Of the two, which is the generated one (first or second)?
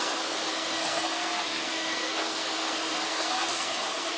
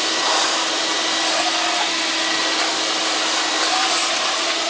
first